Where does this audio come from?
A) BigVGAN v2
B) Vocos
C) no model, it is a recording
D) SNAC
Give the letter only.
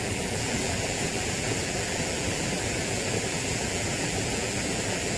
A